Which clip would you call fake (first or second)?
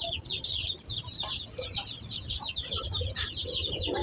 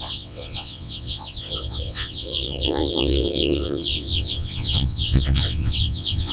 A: second